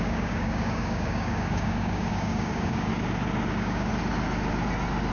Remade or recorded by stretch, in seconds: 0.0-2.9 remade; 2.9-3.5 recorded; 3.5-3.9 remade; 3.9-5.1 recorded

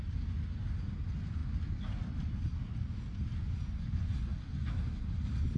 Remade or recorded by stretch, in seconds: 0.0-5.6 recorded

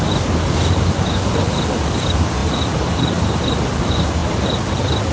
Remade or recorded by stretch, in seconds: 0.0-5.1 recorded